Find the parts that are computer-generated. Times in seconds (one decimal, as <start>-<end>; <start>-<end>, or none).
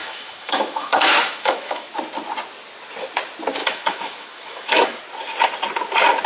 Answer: 0.0-1.9; 3.6-5.0